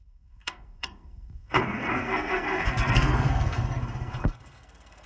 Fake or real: fake